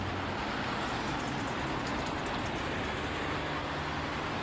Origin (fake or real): real